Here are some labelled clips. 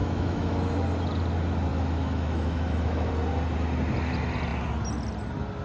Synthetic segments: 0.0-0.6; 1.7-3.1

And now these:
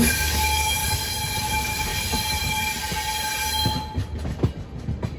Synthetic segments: 0.0-0.8; 1.4-1.9

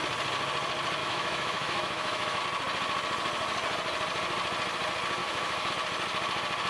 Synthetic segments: 1.0-2.4; 5.2-5.7